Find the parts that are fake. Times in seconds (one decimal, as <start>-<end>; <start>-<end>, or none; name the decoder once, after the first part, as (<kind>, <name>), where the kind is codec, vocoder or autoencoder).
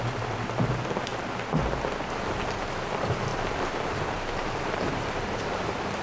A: 3.3-6.0 (vocoder, BigVGAN v2)